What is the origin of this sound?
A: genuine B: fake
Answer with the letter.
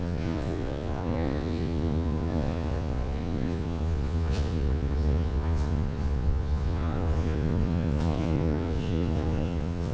B